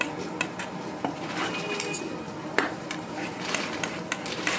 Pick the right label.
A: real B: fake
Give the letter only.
B